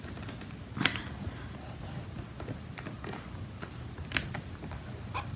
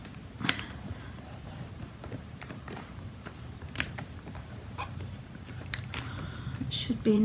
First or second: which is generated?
second